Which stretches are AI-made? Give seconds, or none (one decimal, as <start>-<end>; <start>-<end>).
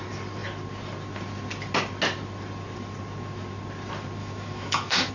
4.2-5.1